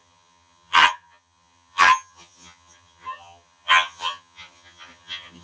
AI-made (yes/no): yes